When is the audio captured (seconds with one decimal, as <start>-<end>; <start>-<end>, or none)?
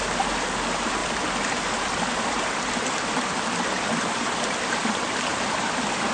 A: 0.0-1.0; 4.7-5.3